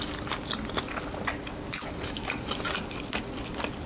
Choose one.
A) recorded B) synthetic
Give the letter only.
A